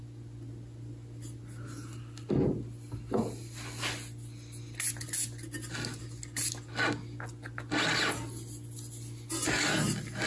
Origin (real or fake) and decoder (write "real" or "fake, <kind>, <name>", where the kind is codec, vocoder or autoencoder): real